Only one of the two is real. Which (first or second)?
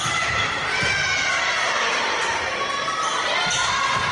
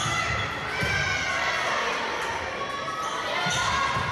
second